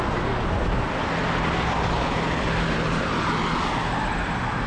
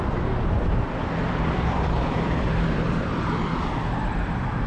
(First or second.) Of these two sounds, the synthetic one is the second